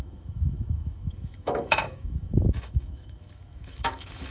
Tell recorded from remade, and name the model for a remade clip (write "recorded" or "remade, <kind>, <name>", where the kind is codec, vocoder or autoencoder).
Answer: remade, autoencoder, DAC-VAE